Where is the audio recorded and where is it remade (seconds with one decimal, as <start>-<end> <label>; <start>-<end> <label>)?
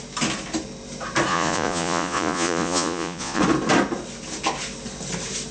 0.0-1.3 recorded; 1.3-3.4 remade; 3.4-5.5 recorded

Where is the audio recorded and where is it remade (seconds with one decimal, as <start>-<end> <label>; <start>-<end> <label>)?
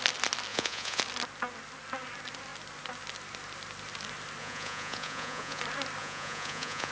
0.0-0.5 recorded; 0.5-1.0 remade; 1.0-4.4 recorded; 4.4-5.6 remade; 5.6-6.0 recorded; 6.0-6.9 remade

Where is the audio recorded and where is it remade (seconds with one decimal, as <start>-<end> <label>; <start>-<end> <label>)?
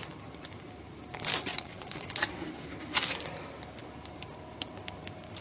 0.0-1.5 recorded; 1.5-2.3 remade; 2.3-5.4 recorded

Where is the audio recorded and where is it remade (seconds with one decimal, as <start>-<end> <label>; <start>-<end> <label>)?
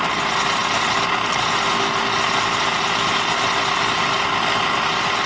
0.0-5.3 recorded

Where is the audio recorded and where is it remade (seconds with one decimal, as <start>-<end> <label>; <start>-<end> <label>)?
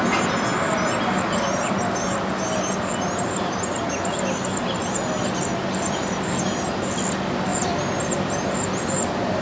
0.0-9.4 recorded